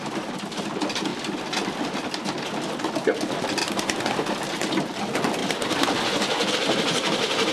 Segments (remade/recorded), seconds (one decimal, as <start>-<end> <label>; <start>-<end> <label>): 0.0-7.5 recorded